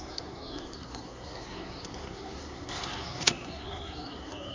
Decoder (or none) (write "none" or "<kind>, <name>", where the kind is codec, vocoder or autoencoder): codec, SNAC